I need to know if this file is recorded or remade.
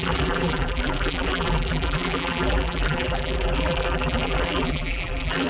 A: remade